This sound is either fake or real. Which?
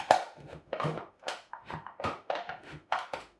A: fake